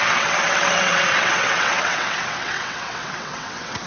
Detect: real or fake fake